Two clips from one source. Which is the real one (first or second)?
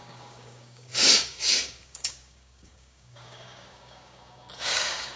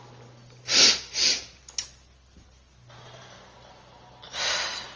second